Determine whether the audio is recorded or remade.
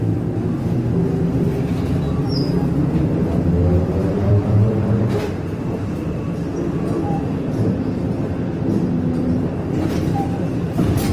remade